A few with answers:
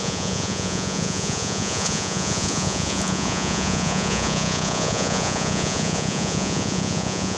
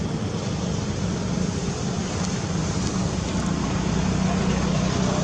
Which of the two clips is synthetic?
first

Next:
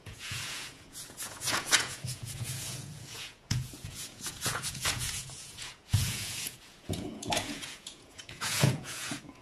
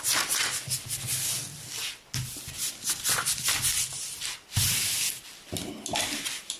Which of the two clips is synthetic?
first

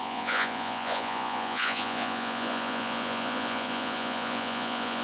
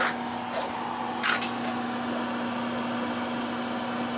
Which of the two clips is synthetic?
first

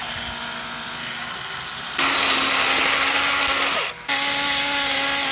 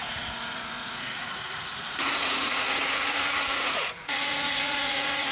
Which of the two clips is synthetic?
second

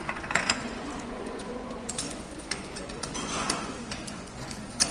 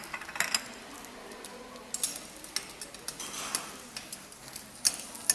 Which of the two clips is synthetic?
first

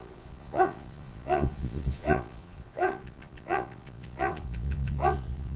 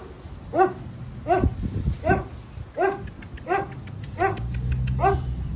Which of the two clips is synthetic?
first